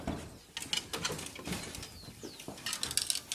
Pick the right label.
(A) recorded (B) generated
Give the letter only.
A